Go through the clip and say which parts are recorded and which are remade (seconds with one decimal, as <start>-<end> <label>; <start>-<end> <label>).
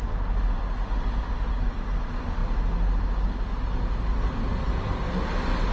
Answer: 0.0-5.7 recorded